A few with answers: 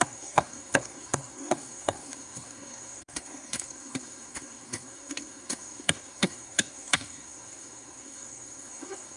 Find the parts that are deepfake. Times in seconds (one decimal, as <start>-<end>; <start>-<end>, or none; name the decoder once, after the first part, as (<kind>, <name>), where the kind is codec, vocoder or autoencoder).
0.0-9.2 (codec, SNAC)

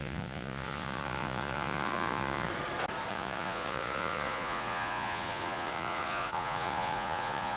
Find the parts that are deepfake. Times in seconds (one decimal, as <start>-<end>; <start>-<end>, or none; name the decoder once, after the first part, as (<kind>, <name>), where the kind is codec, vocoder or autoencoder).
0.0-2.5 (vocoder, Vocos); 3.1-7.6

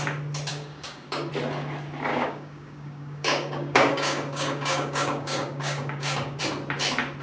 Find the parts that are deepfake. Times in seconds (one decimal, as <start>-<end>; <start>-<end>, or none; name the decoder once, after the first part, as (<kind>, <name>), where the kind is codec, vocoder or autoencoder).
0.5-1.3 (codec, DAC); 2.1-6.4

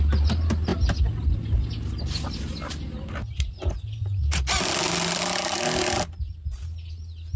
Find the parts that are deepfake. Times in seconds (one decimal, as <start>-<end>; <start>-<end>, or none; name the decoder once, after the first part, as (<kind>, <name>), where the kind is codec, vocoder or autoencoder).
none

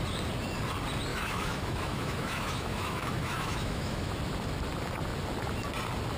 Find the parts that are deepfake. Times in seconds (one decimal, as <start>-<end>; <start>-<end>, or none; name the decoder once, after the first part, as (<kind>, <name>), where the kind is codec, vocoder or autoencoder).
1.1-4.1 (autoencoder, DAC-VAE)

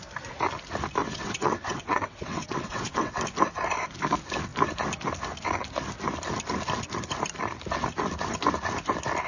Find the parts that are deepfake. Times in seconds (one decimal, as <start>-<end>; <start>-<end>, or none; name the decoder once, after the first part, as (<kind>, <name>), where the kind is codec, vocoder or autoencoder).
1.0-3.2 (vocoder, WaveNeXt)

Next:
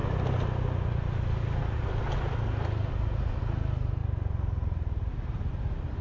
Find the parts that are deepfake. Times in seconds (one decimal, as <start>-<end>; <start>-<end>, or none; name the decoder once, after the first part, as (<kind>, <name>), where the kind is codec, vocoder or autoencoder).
none